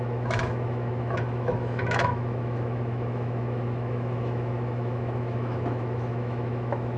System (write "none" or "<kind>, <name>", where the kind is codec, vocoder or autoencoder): autoencoder, DAC-VAE